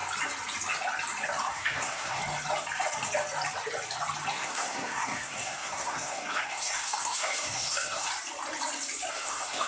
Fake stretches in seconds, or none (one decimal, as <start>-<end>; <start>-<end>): 1.5-2.2; 4.3-8.1; 9.1-9.7